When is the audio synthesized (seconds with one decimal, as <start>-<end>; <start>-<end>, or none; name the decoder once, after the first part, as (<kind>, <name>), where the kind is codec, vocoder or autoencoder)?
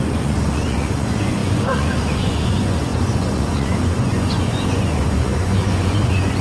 0.0-6.4 (vocoder, Vocos)